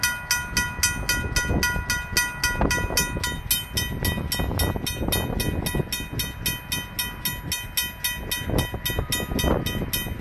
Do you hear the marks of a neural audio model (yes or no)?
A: no